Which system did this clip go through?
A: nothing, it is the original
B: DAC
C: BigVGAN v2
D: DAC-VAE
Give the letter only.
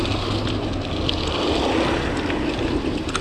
A